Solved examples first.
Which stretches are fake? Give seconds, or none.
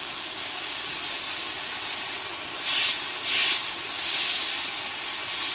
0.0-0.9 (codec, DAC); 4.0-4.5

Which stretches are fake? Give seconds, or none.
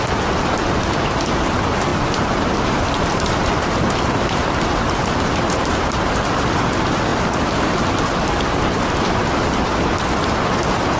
1.9-5.8 (vocoder, BigVGAN v2); 7.1-8.4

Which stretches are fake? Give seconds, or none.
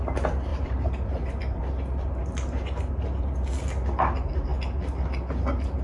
0.5-1.6 (vocoder, BigVGAN v2); 2.2-3.2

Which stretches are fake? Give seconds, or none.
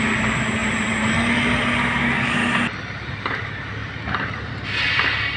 0.6-1.1 (vocoder, BigVGAN v2); 3.8-4.5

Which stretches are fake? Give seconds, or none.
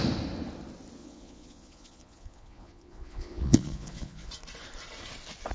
1.0-4.3 (vocoder, Vocos)